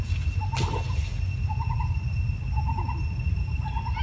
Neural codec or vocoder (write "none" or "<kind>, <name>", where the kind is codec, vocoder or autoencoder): none